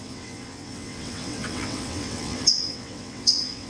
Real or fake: fake